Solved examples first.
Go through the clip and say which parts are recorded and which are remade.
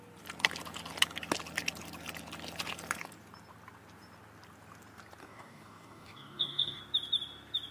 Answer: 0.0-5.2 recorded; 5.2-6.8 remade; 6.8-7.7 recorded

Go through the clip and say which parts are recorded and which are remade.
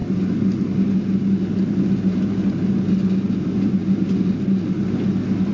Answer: 0.0-5.5 recorded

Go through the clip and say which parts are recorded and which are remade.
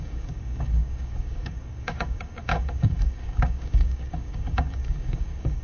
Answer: 0.0-5.6 remade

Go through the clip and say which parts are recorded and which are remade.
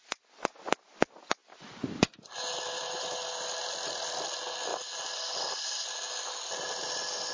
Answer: 0.0-7.3 recorded